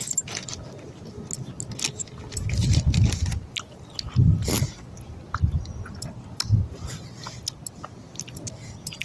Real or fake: real